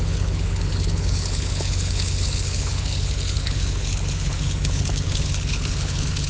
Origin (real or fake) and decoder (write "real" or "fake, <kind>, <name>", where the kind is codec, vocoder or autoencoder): fake, codec, HILCodec